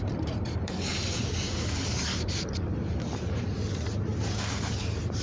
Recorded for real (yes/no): no